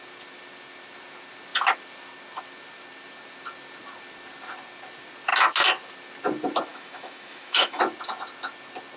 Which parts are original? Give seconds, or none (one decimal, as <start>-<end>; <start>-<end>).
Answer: 0.0-6.7; 7.8-9.0